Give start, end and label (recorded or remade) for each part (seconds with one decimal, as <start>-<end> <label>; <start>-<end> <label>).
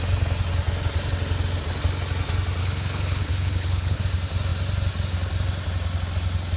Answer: 0.0-2.6 recorded; 2.6-4.0 remade; 4.0-6.6 recorded